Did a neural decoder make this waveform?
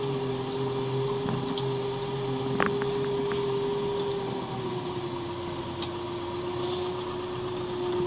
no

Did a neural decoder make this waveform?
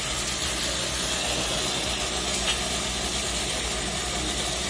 no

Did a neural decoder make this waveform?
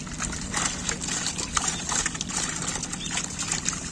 no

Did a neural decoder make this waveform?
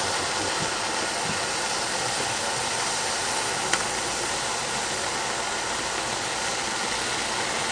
no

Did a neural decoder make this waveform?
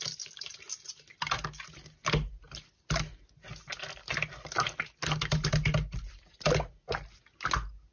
no